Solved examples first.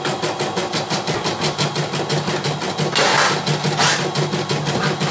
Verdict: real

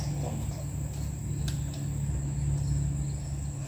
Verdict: real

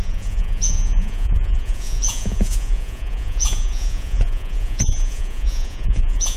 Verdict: fake